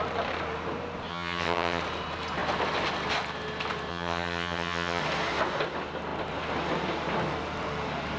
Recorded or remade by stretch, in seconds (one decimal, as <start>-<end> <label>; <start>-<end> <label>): 0.0-1.1 recorded; 1.1-1.8 remade; 1.8-3.9 recorded; 3.9-5.0 remade; 5.0-8.2 recorded

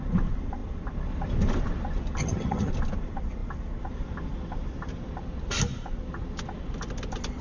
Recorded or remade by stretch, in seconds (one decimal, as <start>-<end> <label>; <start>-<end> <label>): 0.0-2.2 recorded; 2.2-2.7 remade; 2.7-7.4 recorded

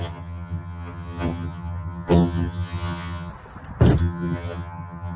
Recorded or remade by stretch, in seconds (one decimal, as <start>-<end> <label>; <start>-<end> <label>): 0.0-3.3 remade; 3.3-4.0 recorded; 4.0-5.2 remade

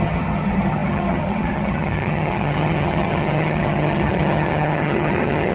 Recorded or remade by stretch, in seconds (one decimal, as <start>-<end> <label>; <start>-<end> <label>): 0.0-5.5 remade

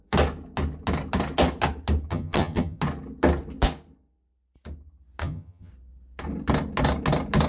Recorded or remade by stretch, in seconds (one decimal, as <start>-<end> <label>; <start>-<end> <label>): 0.0-2.1 recorded; 2.1-2.8 remade; 2.8-5.2 recorded; 5.2-5.7 remade; 5.7-7.5 recorded

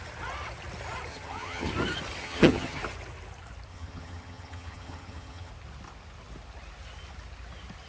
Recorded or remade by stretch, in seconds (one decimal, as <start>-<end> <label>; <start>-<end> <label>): 0.0-1.1 recorded; 1.1-1.7 remade; 1.7-2.2 recorded; 2.2-2.8 remade; 2.8-3.7 recorded; 3.7-5.5 remade; 5.5-7.9 recorded

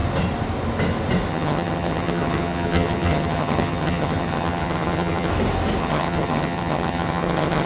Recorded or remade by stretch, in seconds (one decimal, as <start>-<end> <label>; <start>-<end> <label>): 0.0-1.3 recorded; 1.3-5.3 remade; 5.3-5.8 recorded; 5.8-7.7 remade

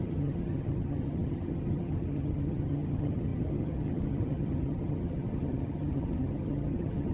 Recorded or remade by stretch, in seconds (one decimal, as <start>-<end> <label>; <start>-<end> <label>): 0.0-7.1 remade